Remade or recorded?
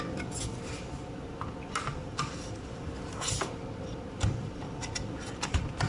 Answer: recorded